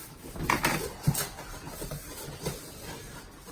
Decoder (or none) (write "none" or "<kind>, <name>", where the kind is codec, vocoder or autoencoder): none